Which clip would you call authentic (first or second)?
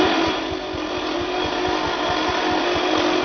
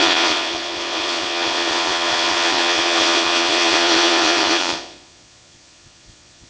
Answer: first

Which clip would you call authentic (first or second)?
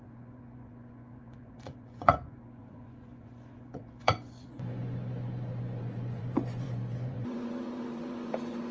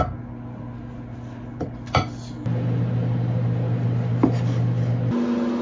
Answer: second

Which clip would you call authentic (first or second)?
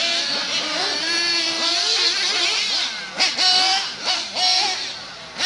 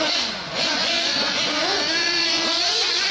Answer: first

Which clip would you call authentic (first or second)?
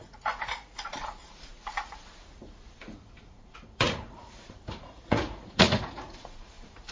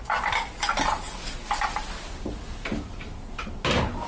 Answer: second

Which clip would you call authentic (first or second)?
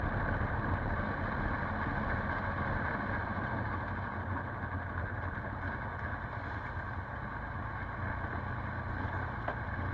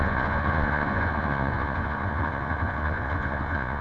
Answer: first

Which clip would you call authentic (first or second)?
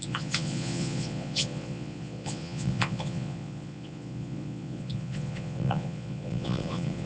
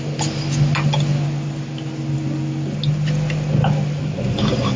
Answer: second